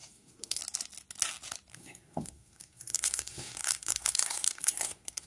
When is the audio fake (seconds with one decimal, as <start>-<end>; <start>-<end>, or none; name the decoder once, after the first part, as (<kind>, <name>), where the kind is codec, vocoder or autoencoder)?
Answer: 0.0-0.6 (codec, SNAC); 1.7-5.3

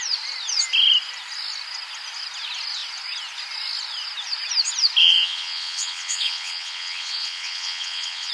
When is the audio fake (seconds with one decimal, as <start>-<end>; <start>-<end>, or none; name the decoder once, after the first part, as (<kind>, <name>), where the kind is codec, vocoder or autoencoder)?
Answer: 5.0-8.3 (vocoder, WaveNeXt)

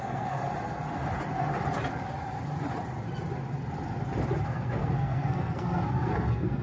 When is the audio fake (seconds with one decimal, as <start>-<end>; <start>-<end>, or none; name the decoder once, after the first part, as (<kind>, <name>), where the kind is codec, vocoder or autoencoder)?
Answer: 0.0-0.4 (codec, SNAC); 4.4-6.6